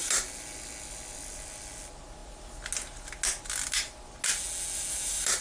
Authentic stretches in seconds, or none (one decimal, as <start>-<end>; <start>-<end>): 0.0-5.4

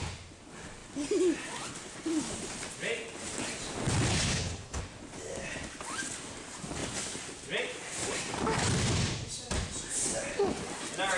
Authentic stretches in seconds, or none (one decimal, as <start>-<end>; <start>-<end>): 0.0-4.1; 4.8-11.2

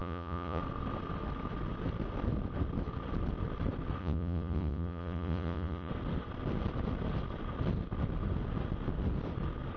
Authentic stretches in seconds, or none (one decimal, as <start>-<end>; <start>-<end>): 0.6-4.0; 5.9-9.8

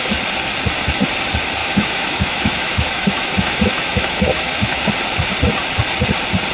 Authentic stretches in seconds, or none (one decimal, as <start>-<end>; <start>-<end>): 0.0-1.6; 4.9-6.5

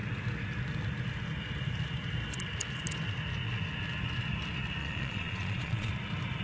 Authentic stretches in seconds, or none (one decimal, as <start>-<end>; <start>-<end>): 0.0-4.8; 5.9-6.4

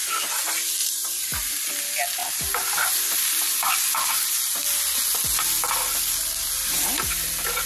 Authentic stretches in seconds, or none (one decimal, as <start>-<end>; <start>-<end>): 0.0-0.8; 1.7-2.2; 4.6-7.7